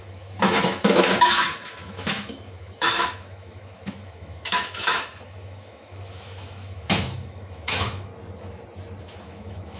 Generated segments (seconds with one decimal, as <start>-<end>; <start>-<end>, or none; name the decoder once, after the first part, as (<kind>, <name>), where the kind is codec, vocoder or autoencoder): 0.0-8.1 (autoencoder, DAC-VAE); 9.0-9.8